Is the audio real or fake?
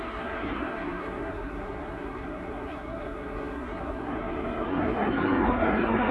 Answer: fake